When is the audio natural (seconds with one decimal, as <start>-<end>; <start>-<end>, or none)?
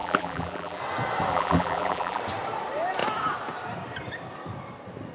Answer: 0.8-1.3; 2.2-5.1